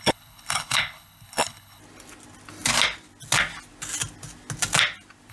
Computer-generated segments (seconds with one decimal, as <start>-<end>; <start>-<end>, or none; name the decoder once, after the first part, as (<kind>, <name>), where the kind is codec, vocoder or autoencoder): 0.0-1.8 (codec, HILCodec)